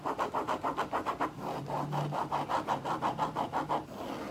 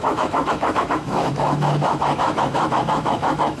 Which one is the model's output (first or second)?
second